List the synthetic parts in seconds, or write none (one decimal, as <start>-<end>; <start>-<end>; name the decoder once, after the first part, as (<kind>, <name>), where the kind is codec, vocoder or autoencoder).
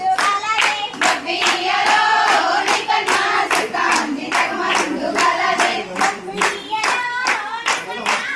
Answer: none